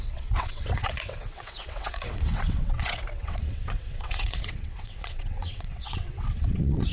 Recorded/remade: remade